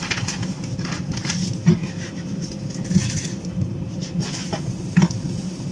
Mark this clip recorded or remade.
recorded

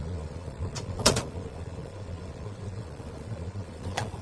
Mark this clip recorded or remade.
remade